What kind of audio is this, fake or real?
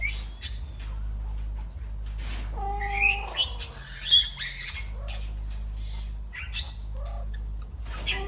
real